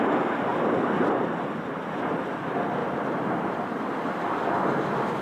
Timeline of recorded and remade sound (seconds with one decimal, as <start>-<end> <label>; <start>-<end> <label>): 0.0-2.8 recorded; 2.8-3.9 remade; 3.9-5.2 recorded